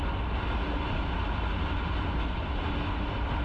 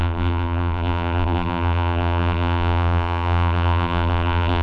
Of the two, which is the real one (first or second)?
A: first